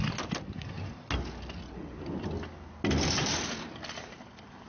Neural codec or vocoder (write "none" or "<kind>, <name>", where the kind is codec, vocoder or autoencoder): none